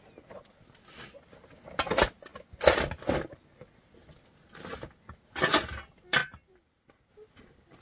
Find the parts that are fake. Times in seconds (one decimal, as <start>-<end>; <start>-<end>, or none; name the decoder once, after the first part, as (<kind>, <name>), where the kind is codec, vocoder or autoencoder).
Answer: 6.2-7.1 (vocoder, BigVGAN v2)